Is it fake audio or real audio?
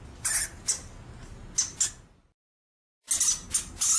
real